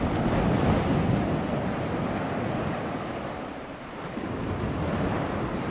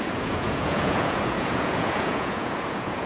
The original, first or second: first